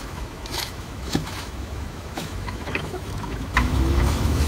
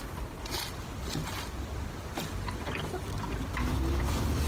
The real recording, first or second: second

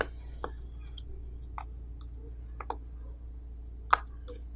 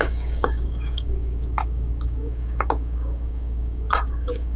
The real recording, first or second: first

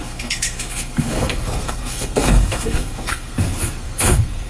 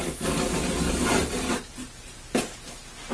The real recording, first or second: second